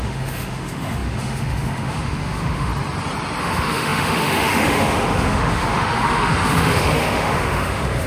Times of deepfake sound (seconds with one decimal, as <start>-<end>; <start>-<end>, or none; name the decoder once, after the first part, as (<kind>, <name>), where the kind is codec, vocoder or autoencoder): 0.0-2.7 (autoencoder, DAC-VAE); 3.4-8.1

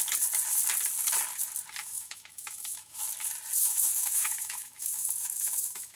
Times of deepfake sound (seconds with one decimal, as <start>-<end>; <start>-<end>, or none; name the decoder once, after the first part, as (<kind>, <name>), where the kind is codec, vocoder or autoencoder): 1.8-3.0 (autoencoder, DAC-VAE); 3.6-6.0

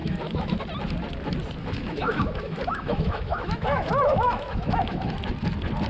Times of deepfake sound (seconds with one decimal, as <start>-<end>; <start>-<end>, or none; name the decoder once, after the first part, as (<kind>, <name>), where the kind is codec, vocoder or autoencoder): 0.0-0.6 (autoencoder, DAC-VAE); 1.6-5.1

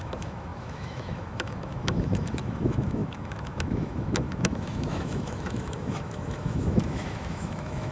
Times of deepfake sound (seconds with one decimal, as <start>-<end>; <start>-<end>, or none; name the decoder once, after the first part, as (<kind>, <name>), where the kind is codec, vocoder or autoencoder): 0.0-7.9 (autoencoder, DAC-VAE)

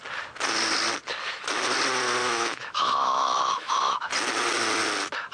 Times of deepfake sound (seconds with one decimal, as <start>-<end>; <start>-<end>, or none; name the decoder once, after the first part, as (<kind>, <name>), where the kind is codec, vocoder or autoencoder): 2.2-4.1 (autoencoder, DAC-VAE)